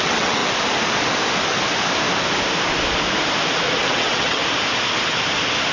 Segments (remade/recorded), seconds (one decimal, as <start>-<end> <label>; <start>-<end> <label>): 0.0-0.4 remade; 0.4-3.8 recorded; 3.8-4.4 remade; 4.4-5.7 recorded